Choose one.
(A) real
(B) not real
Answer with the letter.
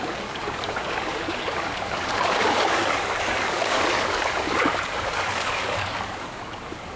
B